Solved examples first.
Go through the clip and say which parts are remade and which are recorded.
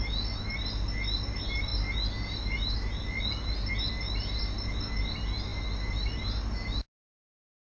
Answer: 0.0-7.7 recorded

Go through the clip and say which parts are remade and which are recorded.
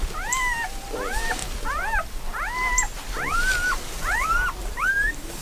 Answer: 0.0-1.4 remade; 1.4-4.6 recorded; 4.6-5.4 remade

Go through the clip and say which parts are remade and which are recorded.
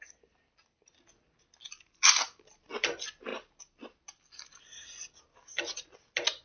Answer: 0.0-6.4 recorded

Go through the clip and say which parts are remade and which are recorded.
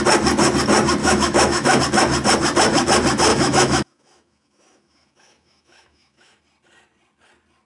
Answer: 0.0-1.0 recorded; 1.0-1.8 remade; 1.8-3.3 recorded; 3.3-6.4 remade; 6.4-7.7 recorded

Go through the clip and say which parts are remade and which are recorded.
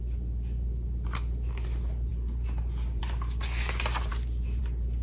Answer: 0.0-5.0 recorded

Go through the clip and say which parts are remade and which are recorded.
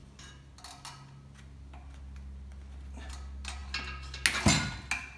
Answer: 0.0-5.2 recorded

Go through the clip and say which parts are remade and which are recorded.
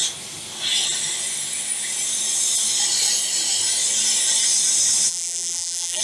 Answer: 0.0-5.1 recorded; 5.1-6.0 remade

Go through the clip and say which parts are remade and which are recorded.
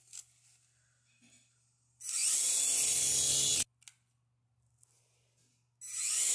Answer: 0.0-6.3 recorded